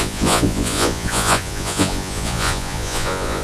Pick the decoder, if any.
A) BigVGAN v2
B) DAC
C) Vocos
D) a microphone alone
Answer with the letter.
C